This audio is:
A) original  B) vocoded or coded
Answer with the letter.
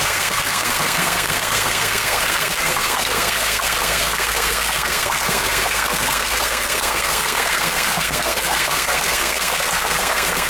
B